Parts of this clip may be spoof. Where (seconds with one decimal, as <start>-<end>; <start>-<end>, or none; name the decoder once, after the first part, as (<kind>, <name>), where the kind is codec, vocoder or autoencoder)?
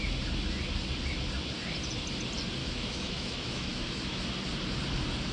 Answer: 2.6-4.2 (autoencoder, DAC-VAE)